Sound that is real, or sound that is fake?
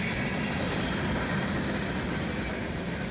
real